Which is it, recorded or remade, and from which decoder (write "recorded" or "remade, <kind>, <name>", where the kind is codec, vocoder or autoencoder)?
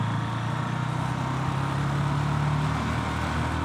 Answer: recorded